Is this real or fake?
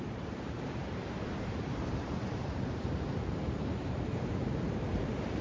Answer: fake